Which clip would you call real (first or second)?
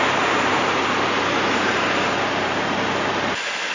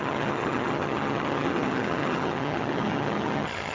first